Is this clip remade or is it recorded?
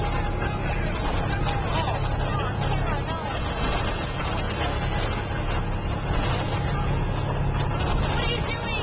recorded